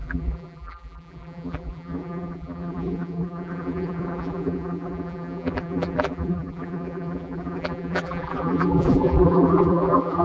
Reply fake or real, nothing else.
fake